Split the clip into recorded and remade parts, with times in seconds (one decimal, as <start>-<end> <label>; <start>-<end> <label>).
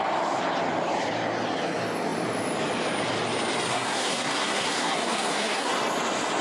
0.0-3.7 recorded; 3.7-5.7 remade; 5.7-6.4 recorded